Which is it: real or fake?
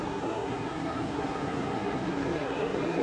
fake